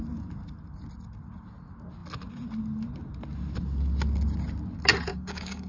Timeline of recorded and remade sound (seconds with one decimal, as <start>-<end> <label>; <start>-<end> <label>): 0.0-5.1 recorded; 5.1-5.7 remade